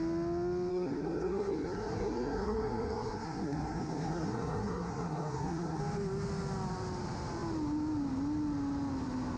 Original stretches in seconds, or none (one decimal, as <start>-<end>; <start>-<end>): 0.0-0.7; 5.8-9.4